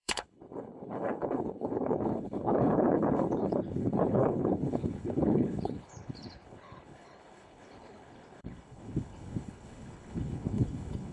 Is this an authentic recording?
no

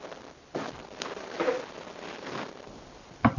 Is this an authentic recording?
yes